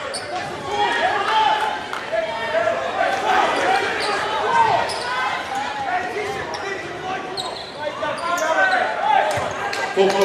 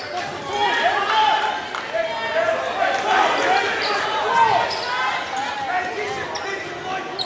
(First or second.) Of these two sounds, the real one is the second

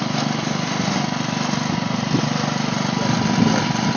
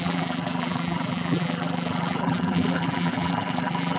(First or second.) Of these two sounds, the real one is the first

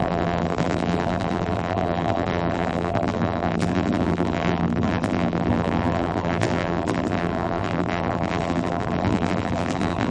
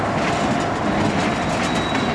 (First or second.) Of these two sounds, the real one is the second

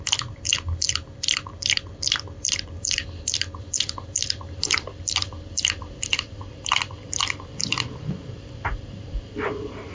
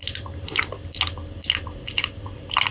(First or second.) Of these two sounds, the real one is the second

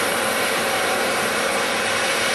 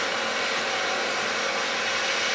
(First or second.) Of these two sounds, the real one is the second